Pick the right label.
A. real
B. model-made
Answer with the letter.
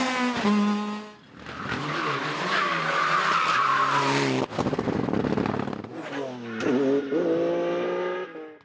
A